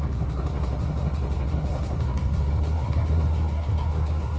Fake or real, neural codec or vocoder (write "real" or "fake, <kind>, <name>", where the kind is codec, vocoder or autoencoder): fake, codec, SNAC